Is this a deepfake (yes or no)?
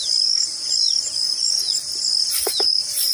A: no